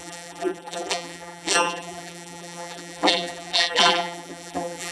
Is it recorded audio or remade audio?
remade